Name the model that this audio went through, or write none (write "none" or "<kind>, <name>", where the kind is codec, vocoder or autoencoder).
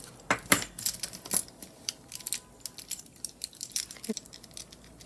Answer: none